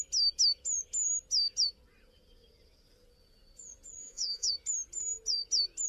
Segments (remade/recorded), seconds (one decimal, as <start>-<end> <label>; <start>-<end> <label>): 0.0-4.0 recorded; 4.0-4.5 remade; 4.5-5.9 recorded